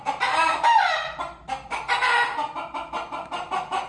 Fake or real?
real